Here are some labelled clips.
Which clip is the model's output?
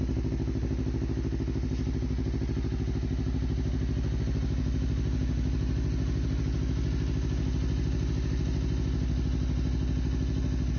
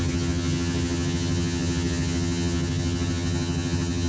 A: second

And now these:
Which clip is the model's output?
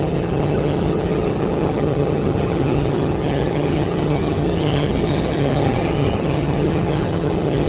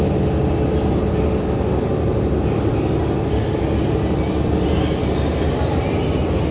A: first